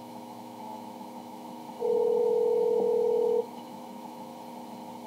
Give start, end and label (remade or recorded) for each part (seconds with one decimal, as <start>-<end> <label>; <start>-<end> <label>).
0.0-1.6 remade; 1.6-2.2 recorded; 2.2-4.3 remade; 4.3-5.1 recorded